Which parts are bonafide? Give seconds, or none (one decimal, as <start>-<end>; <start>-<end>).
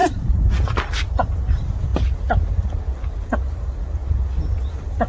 0.5-5.1